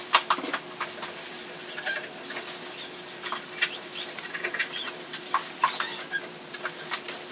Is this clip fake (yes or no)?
no